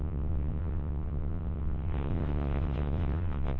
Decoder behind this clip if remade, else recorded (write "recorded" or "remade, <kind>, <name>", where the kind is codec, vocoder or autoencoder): remade, vocoder, WaveNeXt